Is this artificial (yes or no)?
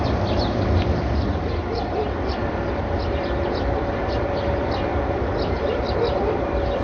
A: yes